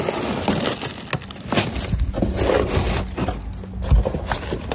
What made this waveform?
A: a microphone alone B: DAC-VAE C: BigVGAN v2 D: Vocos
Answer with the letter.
A